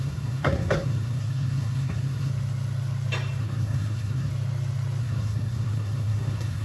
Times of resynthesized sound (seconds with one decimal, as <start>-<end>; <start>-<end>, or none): 0.0-2.3; 3.4-4.3; 5.0-6.6